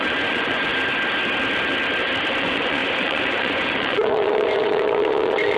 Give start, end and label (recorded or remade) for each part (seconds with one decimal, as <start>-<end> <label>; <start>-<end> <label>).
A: 0.0-0.7 remade; 0.7-2.4 recorded; 2.4-5.6 remade